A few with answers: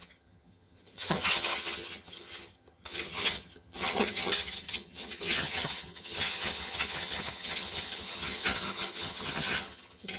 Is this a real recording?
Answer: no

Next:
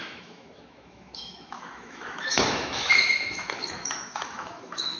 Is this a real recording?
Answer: no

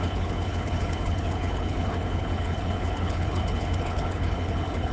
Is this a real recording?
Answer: no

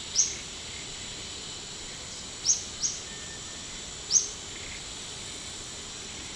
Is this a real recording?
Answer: yes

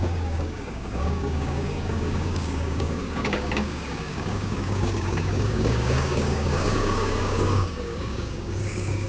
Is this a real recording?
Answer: no